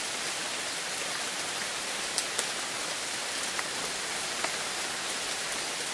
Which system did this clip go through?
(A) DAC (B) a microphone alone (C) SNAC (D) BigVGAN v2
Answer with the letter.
B